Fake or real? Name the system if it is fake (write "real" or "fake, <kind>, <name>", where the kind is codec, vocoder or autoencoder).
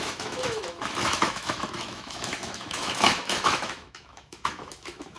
fake, autoencoder, DAC-VAE